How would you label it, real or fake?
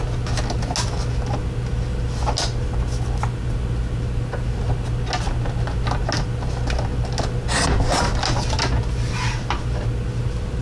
real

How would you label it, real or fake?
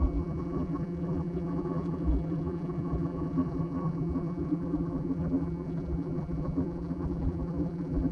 fake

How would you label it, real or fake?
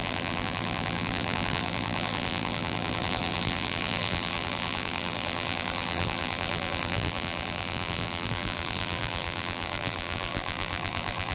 fake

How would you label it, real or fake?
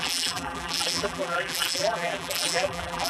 fake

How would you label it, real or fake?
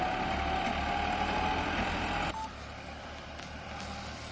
real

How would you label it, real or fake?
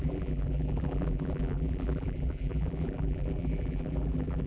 fake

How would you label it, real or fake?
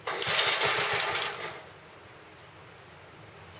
real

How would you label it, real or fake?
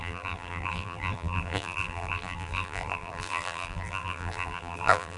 fake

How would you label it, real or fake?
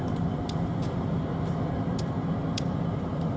fake